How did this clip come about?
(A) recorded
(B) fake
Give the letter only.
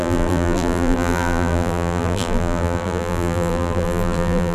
B